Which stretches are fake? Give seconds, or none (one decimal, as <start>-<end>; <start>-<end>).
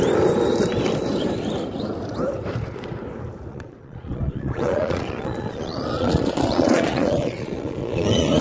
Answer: 3.5-8.4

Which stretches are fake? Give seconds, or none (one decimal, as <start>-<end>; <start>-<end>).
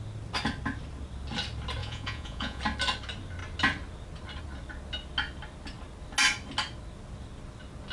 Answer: 1.8-2.6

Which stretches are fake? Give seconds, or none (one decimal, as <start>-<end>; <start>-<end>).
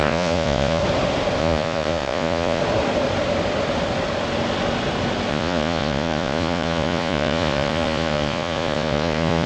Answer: 0.0-0.8; 1.4-2.6; 5.3-9.5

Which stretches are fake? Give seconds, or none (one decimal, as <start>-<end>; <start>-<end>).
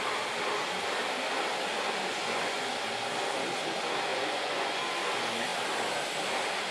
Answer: 2.1-2.7; 4.1-4.8